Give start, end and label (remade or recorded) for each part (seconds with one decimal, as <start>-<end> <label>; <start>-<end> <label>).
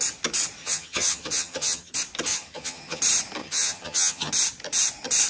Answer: 0.0-0.6 recorded; 0.6-1.9 remade; 1.9-2.3 recorded; 2.3-3.0 remade; 3.0-3.4 recorded; 3.4-4.3 remade; 4.3-5.3 recorded